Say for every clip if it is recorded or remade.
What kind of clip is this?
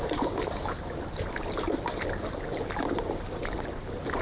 recorded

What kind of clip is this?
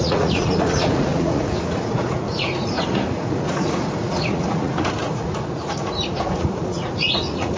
remade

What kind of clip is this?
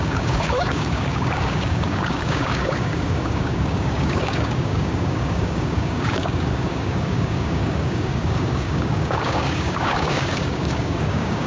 remade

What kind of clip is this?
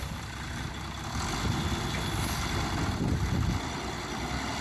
recorded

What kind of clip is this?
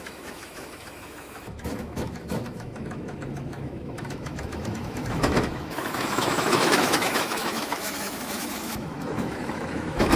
remade